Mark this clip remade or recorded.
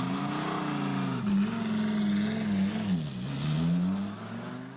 recorded